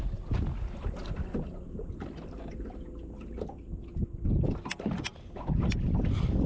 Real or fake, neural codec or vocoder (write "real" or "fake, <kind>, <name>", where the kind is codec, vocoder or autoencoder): real